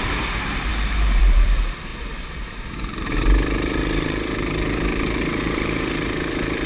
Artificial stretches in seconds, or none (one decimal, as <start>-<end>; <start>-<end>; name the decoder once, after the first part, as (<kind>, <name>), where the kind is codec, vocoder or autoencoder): 0.0-6.7 (vocoder, BigVGAN v2)